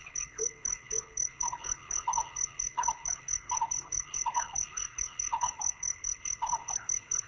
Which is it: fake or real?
fake